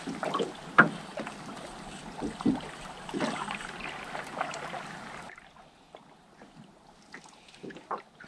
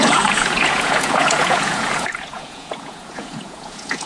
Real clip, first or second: first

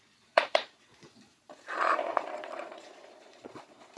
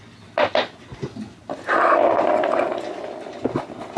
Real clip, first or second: second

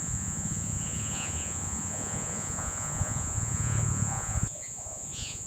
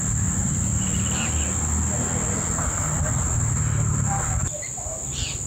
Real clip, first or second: second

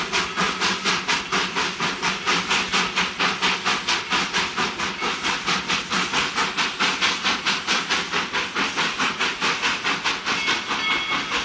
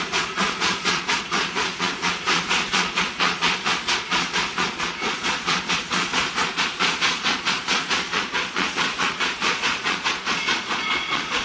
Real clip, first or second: first